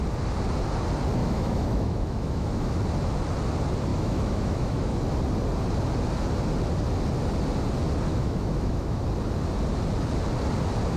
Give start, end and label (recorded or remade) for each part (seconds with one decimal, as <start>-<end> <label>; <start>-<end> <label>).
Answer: 0.0-1.2 recorded; 1.2-2.8 remade; 2.8-3.9 recorded; 3.9-5.0 remade; 5.0-8.1 recorded; 8.1-9.0 remade; 9.0-11.0 recorded